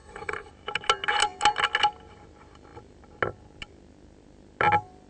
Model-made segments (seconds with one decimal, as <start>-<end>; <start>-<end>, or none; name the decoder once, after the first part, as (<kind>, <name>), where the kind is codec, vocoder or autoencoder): 0.0-0.5 (codec, HILCodec)